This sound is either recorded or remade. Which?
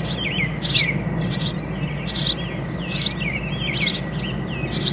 recorded